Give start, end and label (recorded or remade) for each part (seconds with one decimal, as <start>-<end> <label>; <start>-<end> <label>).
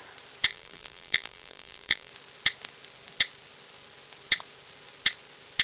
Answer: 0.0-0.5 recorded; 0.5-2.1 remade; 2.1-5.6 recorded